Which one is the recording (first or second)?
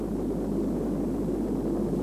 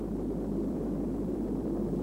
first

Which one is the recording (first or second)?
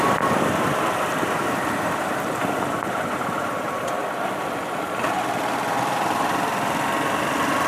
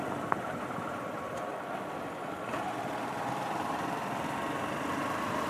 second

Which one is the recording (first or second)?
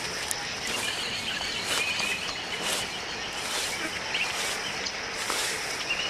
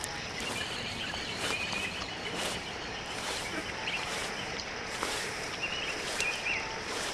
first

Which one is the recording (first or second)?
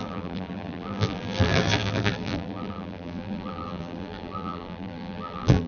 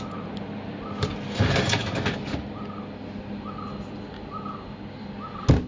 second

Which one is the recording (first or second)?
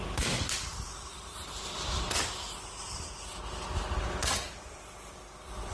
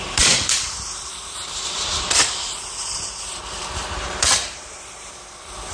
first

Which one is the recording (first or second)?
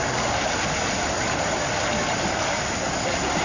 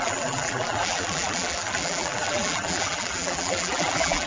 first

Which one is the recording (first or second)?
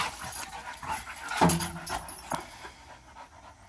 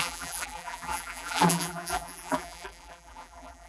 first